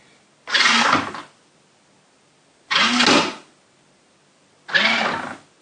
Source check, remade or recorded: recorded